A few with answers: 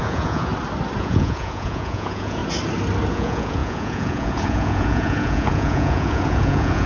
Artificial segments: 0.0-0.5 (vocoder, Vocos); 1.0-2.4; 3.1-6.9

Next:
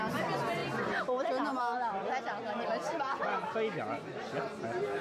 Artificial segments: none

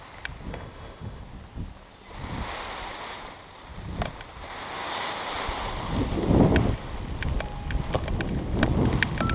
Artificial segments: 0.5-1.2 (autoencoder, DAC-VAE)

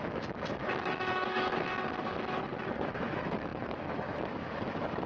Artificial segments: 0.0-1.7 (autoencoder, DAC-VAE); 2.6-5.1